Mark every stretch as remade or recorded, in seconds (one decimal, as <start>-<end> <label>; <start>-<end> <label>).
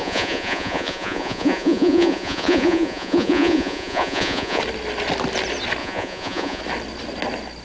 0.0-4.6 remade; 4.6-5.8 recorded; 5.8-6.6 remade; 6.6-7.6 recorded